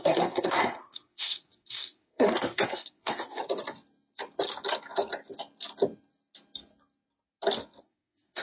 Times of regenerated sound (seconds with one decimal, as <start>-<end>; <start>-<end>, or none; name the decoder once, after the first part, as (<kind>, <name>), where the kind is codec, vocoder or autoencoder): 0.0-3.4 (codec, SNAC); 7.8-8.4